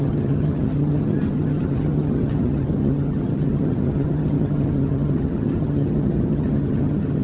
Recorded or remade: remade